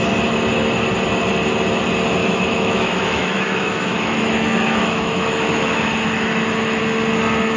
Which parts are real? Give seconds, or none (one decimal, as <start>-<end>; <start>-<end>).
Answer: 0.0-2.2; 6.8-7.6